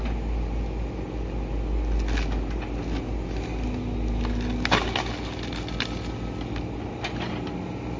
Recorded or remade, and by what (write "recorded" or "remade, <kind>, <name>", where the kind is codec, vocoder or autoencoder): recorded